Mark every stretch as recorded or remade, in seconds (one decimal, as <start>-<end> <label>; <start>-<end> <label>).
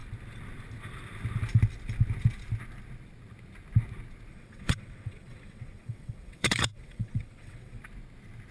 0.0-4.3 recorded; 4.3-7.8 remade; 7.8-8.5 recorded